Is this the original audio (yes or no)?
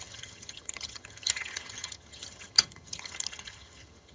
no